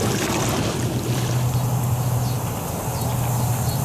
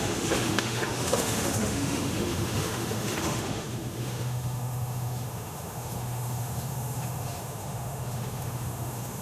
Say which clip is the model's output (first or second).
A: second